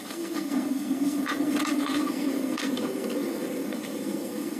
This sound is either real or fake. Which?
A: fake